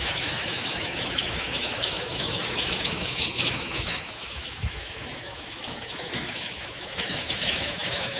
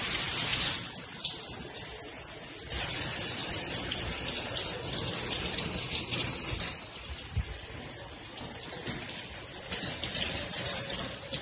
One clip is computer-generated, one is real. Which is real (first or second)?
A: second